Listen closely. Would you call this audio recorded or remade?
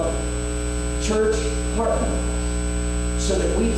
recorded